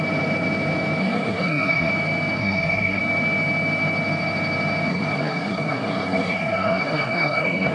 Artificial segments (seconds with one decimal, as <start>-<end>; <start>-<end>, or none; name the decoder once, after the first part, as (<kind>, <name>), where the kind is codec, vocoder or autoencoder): 1.0-1.9 (codec, SNAC); 2.4-3.0; 4.9-7.7